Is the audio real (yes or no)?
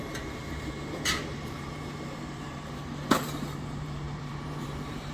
no